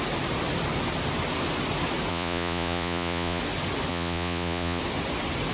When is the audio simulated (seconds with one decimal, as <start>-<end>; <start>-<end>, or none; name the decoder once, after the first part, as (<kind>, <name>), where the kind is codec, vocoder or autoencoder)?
2.1-3.4 (vocoder, Vocos); 3.9-4.8